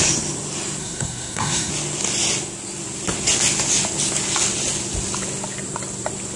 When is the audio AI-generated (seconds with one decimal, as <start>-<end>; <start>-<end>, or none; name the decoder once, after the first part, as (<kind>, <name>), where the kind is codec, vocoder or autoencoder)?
0.8-1.7 (codec, SNAC)